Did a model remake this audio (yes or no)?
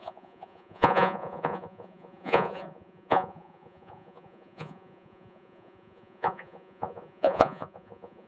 yes